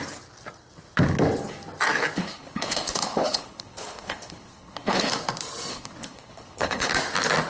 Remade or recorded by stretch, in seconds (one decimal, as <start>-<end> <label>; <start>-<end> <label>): 0.0-2.2 recorded; 2.2-5.1 remade; 5.1-5.7 recorded; 5.7-6.9 remade; 6.9-7.5 recorded